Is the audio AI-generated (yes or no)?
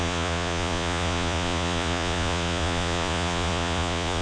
yes